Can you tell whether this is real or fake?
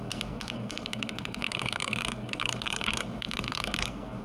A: fake